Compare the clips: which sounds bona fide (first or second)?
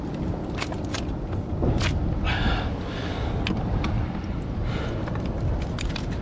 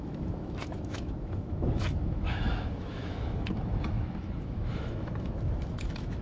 first